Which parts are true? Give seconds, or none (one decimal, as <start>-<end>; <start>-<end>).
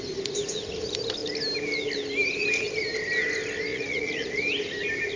0.0-3.7; 4.4-5.2